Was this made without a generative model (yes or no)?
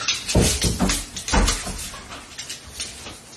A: yes